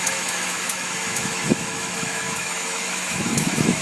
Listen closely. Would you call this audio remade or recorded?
remade